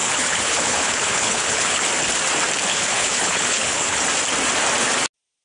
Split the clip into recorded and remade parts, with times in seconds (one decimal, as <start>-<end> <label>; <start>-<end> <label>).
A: 0.0-1.8 remade; 1.8-2.7 recorded; 2.7-4.0 remade; 4.0-5.4 recorded